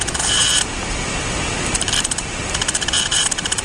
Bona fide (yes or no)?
no